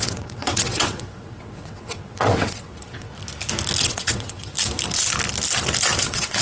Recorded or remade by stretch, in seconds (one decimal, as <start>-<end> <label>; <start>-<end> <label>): 0.0-3.1 remade; 3.1-3.8 recorded; 3.8-4.5 remade; 4.5-6.0 recorded; 6.0-6.4 remade